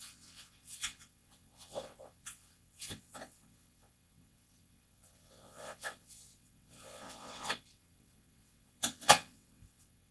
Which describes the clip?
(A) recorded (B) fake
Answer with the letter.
B